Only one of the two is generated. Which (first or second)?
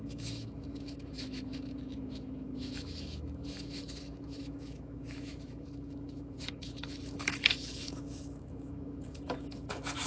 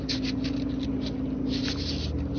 first